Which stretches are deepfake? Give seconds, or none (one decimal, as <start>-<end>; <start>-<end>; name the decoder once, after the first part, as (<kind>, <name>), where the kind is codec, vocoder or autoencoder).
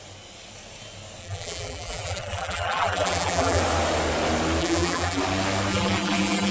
1.2-3.6 (vocoder, BigVGAN v2); 4.6-5.2; 5.7-6.5